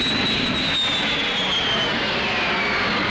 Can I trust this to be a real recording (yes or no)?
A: yes